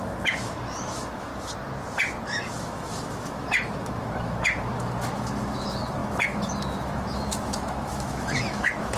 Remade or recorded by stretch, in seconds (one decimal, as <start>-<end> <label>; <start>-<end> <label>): 0.0-1.3 remade; 1.3-2.2 recorded; 2.2-9.0 remade